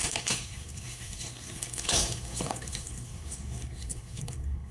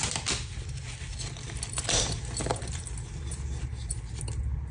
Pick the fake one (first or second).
first